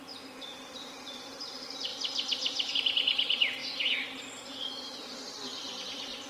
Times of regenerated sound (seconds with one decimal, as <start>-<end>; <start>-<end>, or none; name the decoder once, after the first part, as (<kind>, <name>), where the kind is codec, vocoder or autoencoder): 0.0-1.9 (vocoder, BigVGAN v2); 2.7-3.6; 4.8-6.3